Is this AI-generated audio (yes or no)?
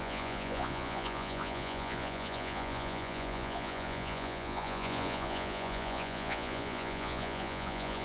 yes